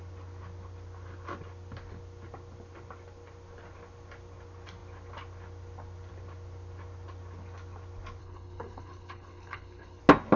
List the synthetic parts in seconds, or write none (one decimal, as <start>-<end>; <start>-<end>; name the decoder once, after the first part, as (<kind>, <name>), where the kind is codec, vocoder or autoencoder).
8.2-10.0 (codec, HILCodec)